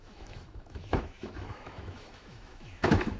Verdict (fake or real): fake